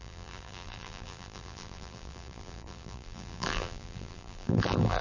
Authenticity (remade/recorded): remade